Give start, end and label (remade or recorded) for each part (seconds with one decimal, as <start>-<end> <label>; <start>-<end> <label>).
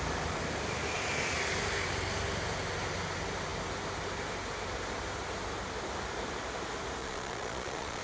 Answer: 0.0-7.0 recorded; 7.0-8.0 remade